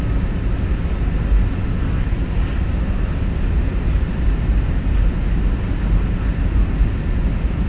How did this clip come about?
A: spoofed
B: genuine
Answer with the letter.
B